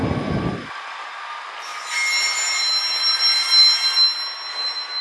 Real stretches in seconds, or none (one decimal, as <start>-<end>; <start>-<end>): 0.0-5.0